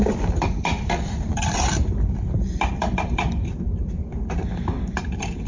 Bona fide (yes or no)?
no